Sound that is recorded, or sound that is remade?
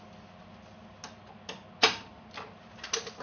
recorded